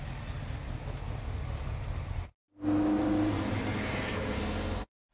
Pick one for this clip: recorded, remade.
recorded